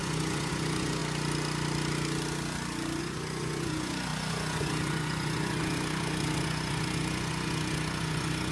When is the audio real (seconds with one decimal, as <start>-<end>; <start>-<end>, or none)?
1.0-3.0